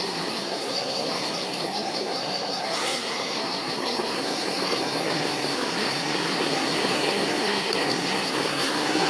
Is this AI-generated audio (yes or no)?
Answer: yes